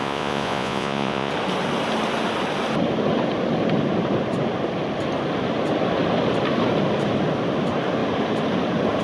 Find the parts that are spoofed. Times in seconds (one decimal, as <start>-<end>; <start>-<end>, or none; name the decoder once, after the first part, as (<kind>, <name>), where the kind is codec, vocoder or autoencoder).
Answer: 0.0-1.3 (vocoder, Vocos)